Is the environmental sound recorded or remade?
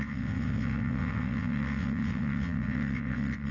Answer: remade